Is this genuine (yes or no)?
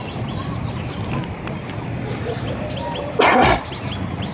yes